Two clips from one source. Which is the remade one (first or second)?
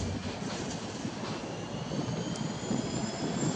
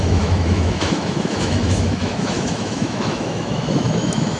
second